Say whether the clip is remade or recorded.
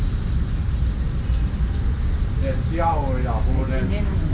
recorded